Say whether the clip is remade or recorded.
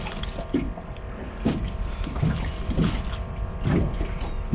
recorded